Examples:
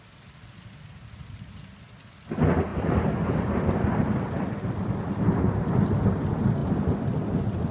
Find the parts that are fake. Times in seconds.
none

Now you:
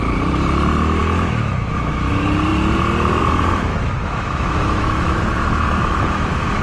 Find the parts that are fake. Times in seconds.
1.0-2.1 (autoencoder, DAC-VAE); 3.7-6.6

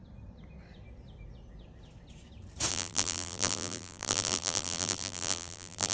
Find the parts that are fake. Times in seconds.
2.7-5.9 (vocoder, BigVGAN v2)